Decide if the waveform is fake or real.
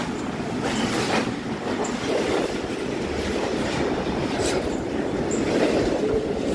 real